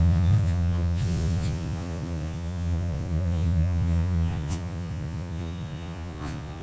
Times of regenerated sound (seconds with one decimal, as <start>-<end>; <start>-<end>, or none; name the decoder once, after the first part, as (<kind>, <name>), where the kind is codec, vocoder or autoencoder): 0.0-6.6 (vocoder, Vocos)